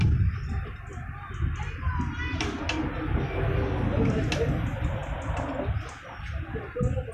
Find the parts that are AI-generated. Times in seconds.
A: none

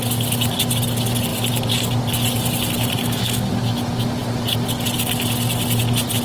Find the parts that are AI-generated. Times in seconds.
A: 3.0-3.5 (codec, SNAC)

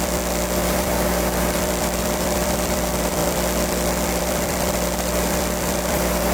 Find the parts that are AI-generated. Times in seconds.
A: 0.0-6.3 (vocoder, BigVGAN v2)

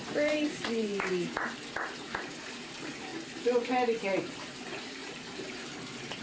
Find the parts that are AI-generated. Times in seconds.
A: 0.0-3.1 (vocoder, BigVGAN v2); 4.3-6.2